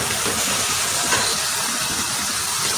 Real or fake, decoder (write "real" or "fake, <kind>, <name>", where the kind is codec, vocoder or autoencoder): real